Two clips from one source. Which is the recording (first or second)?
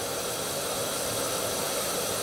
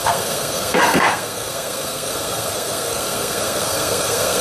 first